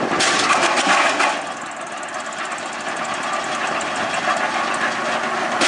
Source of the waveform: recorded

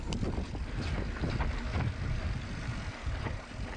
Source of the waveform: recorded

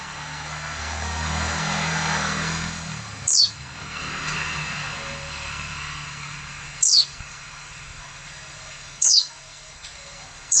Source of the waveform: remade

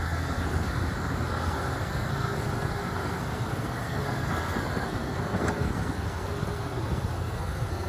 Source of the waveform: remade